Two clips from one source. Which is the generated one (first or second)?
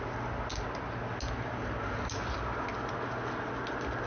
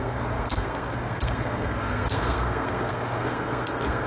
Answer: second